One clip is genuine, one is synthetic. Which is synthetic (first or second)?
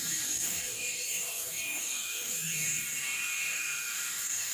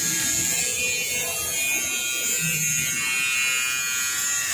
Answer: first